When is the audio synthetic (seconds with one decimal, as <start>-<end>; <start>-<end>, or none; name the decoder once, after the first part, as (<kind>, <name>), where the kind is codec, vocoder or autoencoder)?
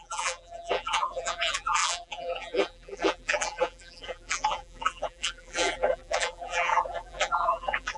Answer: 0.0-8.0 (vocoder, BigVGAN v2)